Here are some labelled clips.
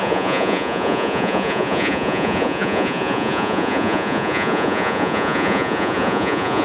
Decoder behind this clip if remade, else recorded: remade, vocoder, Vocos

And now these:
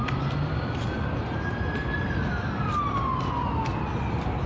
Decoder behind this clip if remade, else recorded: recorded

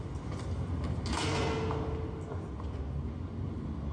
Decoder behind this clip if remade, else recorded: recorded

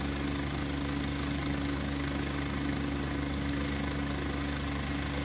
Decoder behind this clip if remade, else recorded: recorded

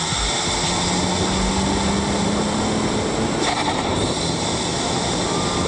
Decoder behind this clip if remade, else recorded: recorded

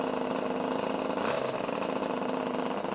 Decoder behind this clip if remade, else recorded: recorded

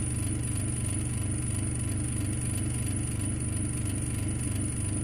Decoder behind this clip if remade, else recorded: recorded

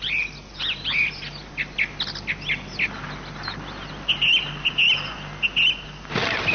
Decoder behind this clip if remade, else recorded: recorded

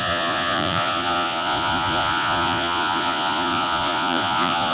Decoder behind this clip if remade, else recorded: remade, vocoder, Vocos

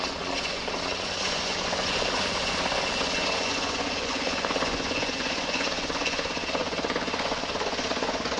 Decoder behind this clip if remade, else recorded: remade, vocoder, Vocos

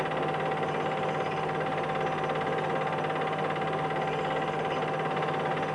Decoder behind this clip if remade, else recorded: recorded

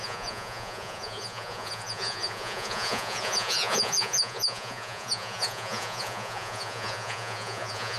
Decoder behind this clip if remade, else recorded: remade, vocoder, Vocos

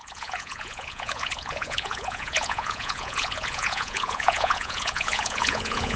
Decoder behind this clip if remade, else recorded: remade, vocoder, Vocos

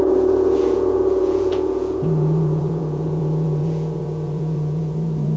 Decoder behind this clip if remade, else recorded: remade, vocoder, Vocos